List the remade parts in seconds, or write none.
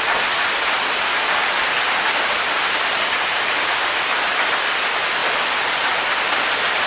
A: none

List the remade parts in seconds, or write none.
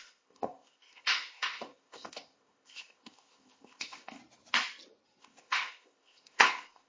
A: 0.0-4.2; 5.2-6.9